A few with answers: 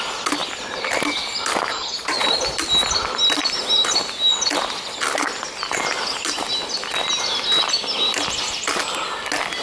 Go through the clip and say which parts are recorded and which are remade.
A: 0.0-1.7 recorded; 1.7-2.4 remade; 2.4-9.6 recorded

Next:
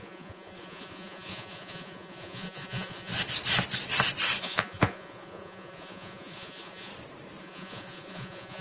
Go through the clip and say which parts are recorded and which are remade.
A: 0.0-3.1 remade; 3.1-4.4 recorded; 4.4-6.9 remade; 6.9-7.4 recorded; 7.4-8.6 remade

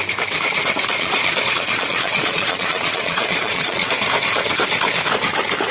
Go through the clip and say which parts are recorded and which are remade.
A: 0.0-0.9 recorded; 0.9-3.9 remade; 3.9-5.7 recorded

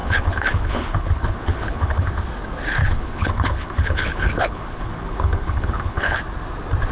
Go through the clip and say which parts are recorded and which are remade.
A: 0.0-2.1 remade; 2.1-2.8 recorded; 2.8-6.2 remade; 6.2-6.9 recorded

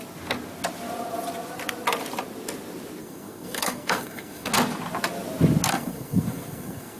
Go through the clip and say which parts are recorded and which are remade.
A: 0.0-3.0 recorded; 3.0-4.5 remade; 4.5-5.7 recorded; 5.7-7.0 remade

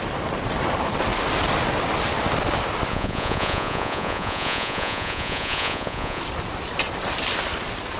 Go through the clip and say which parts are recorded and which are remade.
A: 0.0-2.9 recorded; 2.9-6.2 remade; 6.2-8.0 recorded

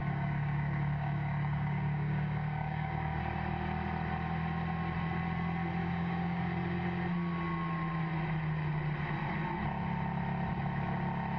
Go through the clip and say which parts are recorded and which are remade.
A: 0.0-3.2 remade; 3.2-5.8 recorded; 5.8-6.4 remade; 6.4-11.4 recorded

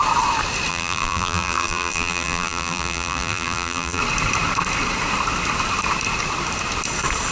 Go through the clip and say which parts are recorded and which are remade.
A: 0.0-0.7 recorded; 0.7-4.0 remade; 4.0-7.3 recorded